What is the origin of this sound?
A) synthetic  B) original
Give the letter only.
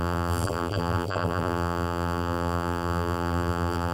A